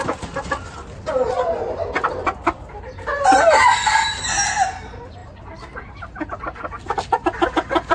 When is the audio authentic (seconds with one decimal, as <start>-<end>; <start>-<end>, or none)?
0.0-7.9